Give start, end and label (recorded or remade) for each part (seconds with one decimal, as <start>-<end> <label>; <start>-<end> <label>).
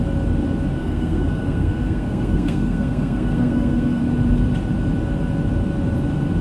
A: 0.0-0.8 recorded; 0.8-4.0 remade; 4.0-6.4 recorded